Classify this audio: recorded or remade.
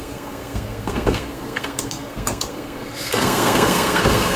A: remade